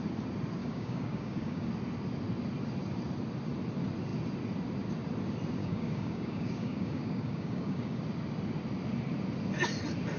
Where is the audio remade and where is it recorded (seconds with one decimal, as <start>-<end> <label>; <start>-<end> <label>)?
0.0-0.6 recorded; 0.6-1.7 remade; 1.7-5.6 recorded; 5.6-8.0 remade; 8.0-10.2 recorded

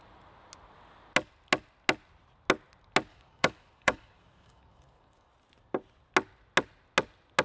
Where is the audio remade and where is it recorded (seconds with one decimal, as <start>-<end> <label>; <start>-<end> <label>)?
0.0-3.1 recorded; 3.1-5.3 remade; 5.3-7.4 recorded